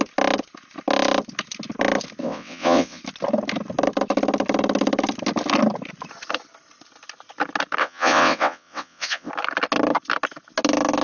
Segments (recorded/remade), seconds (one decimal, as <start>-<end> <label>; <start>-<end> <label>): 0.0-2.2 recorded; 2.2-3.0 remade; 3.0-7.8 recorded; 7.8-9.3 remade; 9.3-11.0 recorded